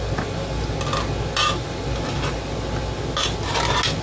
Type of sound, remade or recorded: recorded